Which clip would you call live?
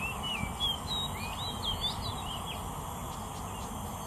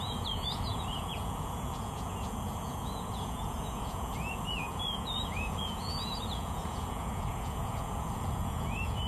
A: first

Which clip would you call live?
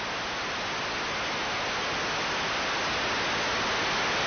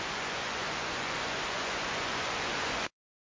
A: first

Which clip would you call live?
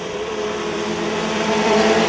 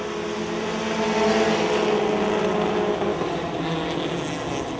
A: second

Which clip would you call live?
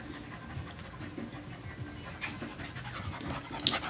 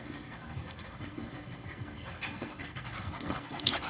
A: first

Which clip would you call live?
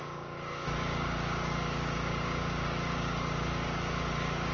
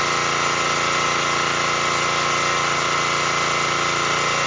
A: second